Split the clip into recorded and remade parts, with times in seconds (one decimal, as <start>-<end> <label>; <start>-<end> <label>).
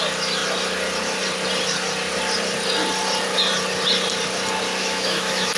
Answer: 0.0-4.8 recorded; 4.8-5.6 remade